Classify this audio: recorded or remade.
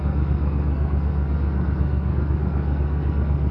remade